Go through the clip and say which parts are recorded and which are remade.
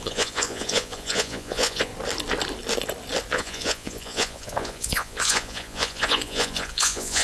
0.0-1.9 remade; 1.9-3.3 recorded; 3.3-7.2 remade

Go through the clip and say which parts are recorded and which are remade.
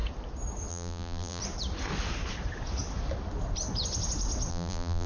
0.0-0.7 recorded; 0.7-1.4 remade; 1.4-4.5 recorded; 4.5-5.1 remade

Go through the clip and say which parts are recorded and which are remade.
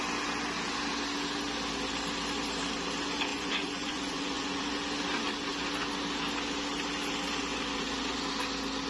0.0-3.3 recorded; 3.3-4.6 remade; 4.6-8.9 recorded